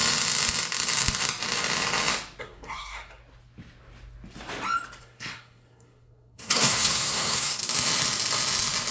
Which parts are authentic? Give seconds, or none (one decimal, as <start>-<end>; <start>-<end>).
0.0-2.4; 3.2-5.0; 7.6-8.9